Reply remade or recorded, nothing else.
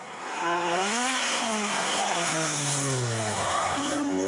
remade